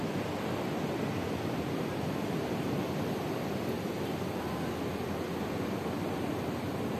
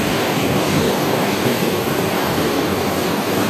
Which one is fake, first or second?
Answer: second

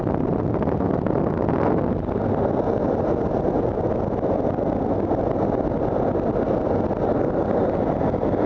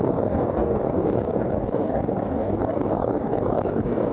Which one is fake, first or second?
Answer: second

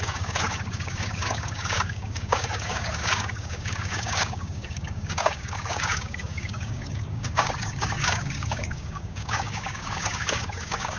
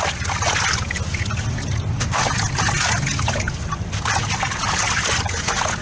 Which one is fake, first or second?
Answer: first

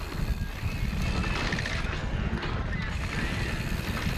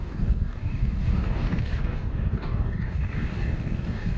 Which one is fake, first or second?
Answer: second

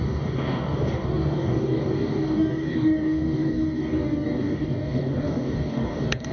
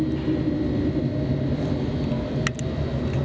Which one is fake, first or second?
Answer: first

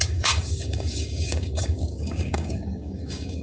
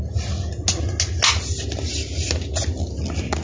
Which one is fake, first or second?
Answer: first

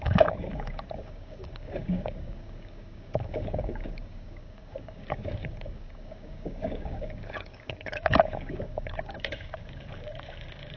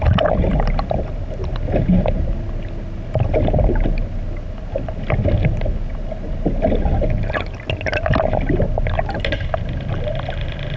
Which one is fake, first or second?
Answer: first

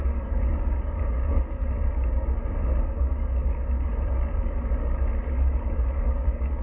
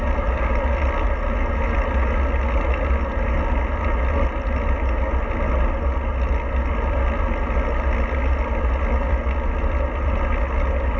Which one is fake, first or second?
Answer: first